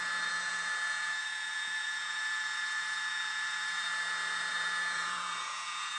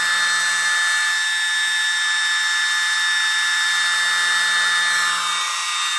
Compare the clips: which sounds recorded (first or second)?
second